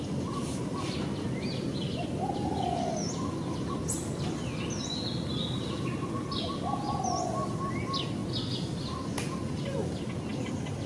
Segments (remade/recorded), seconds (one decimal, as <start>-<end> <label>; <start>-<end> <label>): 0.0-10.9 recorded